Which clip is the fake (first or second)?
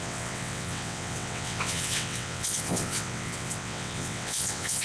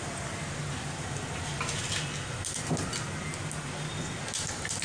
first